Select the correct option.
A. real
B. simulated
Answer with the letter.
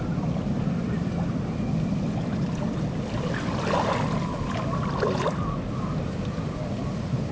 A